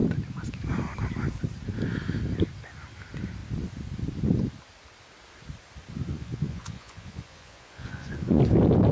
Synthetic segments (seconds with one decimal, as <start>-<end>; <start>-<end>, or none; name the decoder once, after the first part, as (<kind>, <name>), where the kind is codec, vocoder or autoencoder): 6.1-8.4 (vocoder, Vocos)